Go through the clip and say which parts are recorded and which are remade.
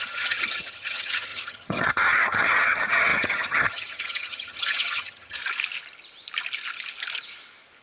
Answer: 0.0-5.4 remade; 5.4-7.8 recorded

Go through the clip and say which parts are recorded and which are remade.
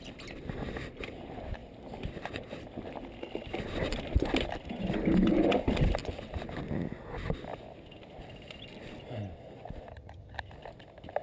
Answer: 0.0-9.9 recorded; 9.9-10.5 remade; 10.5-11.2 recorded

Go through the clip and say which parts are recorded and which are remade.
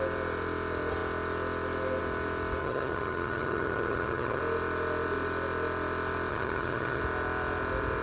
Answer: 0.0-2.6 recorded; 2.6-4.4 remade; 4.4-6.3 recorded; 6.3-7.0 remade; 7.0-8.0 recorded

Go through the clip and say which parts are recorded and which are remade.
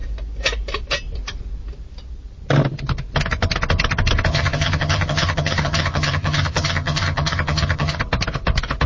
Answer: 0.0-4.3 recorded; 4.3-8.0 remade; 8.0-8.9 recorded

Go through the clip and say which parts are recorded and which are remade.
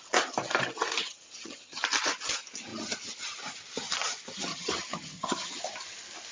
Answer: 0.0-1.0 recorded; 1.0-1.8 remade; 1.8-4.5 recorded; 4.5-5.6 remade; 5.6-6.3 recorded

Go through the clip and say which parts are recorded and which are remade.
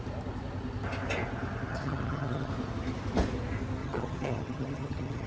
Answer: 0.0-1.7 recorded; 1.7-2.5 remade; 2.5-3.8 recorded; 3.8-5.3 remade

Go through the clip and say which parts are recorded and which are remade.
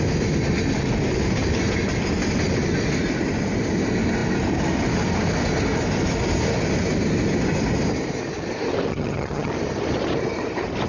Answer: 0.0-8.9 recorded; 8.9-9.5 remade; 9.5-10.9 recorded